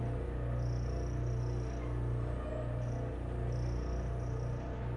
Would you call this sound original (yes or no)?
yes